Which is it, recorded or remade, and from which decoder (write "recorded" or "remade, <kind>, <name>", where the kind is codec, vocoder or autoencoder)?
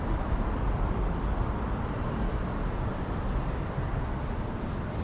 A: remade, vocoder, BigVGAN v2